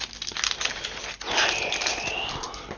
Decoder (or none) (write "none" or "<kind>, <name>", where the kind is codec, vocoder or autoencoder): none